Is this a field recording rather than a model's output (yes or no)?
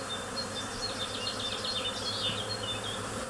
yes